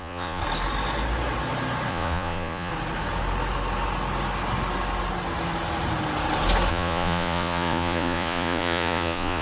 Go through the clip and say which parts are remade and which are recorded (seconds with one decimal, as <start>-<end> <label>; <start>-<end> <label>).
0.0-0.4 remade; 0.4-1.9 recorded; 1.9-2.7 remade; 2.7-6.7 recorded; 6.7-9.4 remade